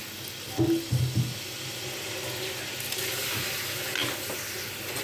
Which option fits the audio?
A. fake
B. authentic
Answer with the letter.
B